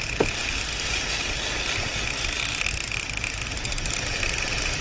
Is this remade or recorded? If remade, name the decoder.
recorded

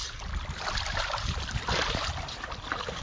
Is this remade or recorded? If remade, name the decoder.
remade, vocoder, BigVGAN v2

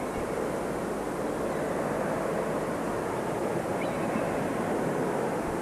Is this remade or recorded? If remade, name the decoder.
recorded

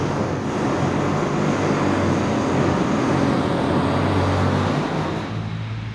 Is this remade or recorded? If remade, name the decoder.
recorded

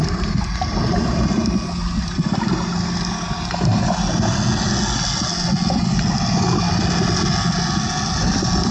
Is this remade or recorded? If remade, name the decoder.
recorded